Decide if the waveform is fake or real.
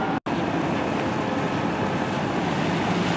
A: real